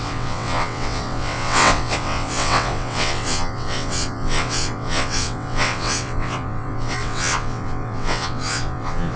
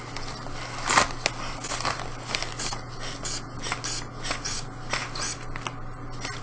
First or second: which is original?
second